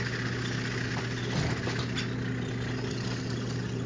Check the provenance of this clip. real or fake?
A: real